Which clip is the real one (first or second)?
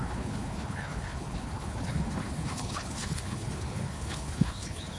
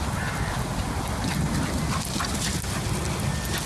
second